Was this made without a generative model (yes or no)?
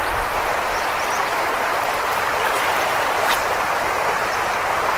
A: no